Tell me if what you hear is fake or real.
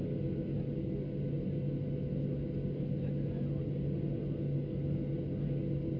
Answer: real